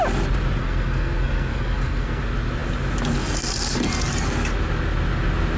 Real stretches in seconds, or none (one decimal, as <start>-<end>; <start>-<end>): 0.0-0.6; 2.2-5.6